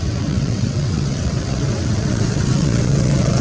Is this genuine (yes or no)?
no